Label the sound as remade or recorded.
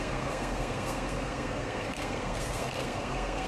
remade